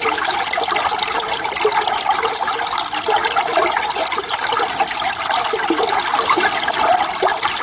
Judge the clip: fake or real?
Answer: real